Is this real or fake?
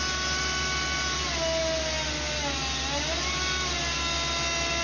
real